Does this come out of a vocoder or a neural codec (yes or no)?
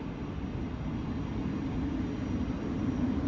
no